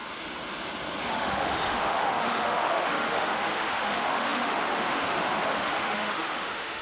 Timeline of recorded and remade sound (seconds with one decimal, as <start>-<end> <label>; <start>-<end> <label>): 0.0-1.1 recorded; 1.1-6.8 remade

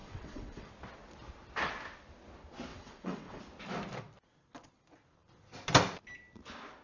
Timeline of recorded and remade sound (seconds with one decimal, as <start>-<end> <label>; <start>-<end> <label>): 0.0-0.7 remade; 0.7-2.7 recorded; 2.7-3.4 remade; 3.4-6.8 recorded

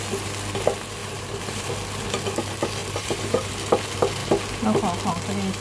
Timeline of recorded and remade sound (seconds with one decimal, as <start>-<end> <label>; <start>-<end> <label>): 0.0-1.0 recorded; 1.0-1.7 remade; 1.7-2.8 recorded; 2.8-3.5 remade; 3.5-5.6 recorded

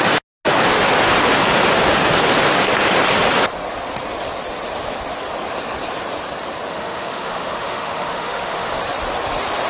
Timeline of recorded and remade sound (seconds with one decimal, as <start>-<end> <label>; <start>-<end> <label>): 0.0-6.7 recorded; 6.7-8.8 remade; 8.8-9.7 recorded

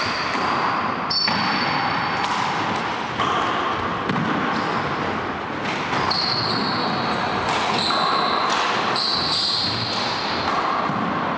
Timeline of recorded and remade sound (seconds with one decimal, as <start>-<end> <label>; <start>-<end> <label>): 0.0-11.4 recorded

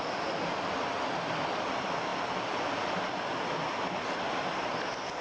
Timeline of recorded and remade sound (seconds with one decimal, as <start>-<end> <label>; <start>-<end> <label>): 0.0-5.2 recorded

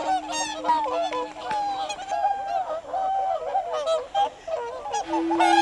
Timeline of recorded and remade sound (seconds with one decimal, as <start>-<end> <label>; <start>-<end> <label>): 0.0-5.6 recorded